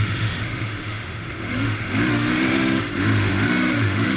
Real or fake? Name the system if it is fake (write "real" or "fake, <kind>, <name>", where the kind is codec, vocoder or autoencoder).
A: fake, autoencoder, DAC-VAE